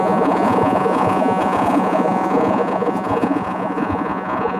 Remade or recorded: remade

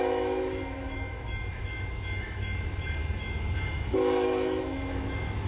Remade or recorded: remade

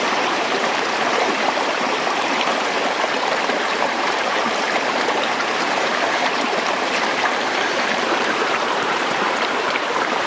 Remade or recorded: remade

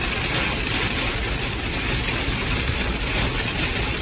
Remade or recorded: recorded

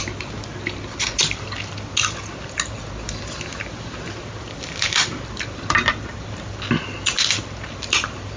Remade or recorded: recorded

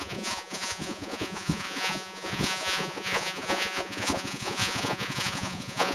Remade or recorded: remade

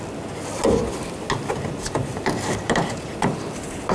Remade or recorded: recorded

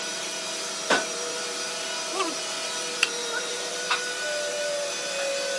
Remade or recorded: remade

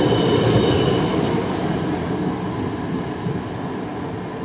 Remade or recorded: recorded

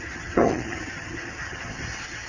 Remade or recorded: remade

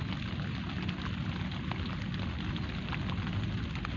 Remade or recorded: recorded